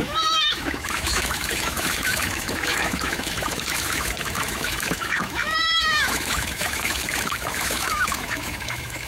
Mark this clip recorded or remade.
remade